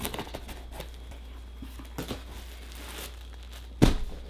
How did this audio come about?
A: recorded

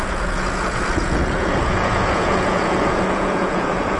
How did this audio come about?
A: remade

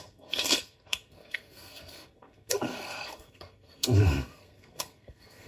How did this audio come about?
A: remade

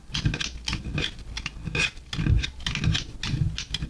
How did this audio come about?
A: recorded